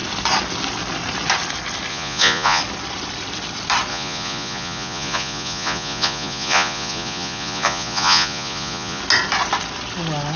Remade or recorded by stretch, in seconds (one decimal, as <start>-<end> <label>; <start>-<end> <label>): 0.0-1.9 recorded; 1.9-2.6 remade; 2.6-3.9 recorded; 3.9-9.0 remade; 9.0-10.4 recorded